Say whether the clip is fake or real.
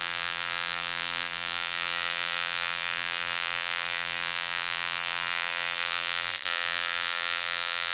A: fake